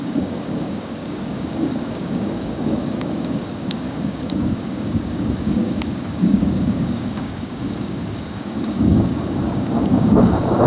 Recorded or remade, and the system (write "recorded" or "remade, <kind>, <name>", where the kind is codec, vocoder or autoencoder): remade, codec, DAC